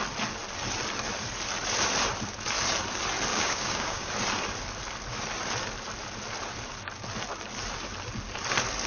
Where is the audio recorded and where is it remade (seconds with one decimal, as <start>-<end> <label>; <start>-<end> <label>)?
0.0-3.3 recorded; 3.3-4.1 remade; 4.1-8.9 recorded